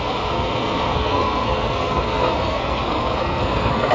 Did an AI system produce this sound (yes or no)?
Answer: yes